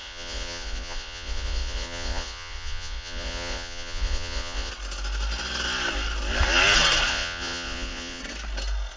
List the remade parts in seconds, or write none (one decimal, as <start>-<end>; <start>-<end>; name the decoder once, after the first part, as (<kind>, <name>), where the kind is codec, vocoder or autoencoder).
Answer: 0.0-4.7 (vocoder, Vocos); 7.1-8.2